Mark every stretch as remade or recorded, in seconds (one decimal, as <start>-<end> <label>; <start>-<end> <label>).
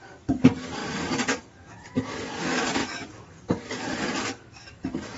0.0-5.2 remade